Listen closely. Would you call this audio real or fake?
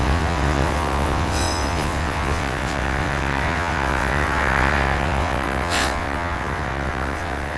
fake